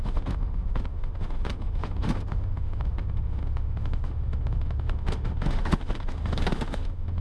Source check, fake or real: fake